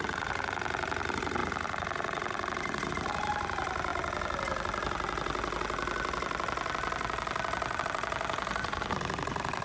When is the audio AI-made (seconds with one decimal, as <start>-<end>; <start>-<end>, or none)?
0.0-1.4; 2.9-3.9; 7.8-9.6